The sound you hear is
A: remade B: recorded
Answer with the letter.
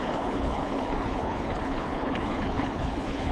A